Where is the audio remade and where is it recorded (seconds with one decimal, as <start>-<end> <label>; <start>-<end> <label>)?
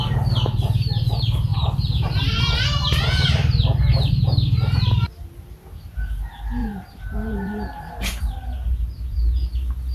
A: 0.0-6.6 recorded; 6.6-8.2 remade; 8.2-8.7 recorded; 8.7-9.5 remade; 9.5-9.9 recorded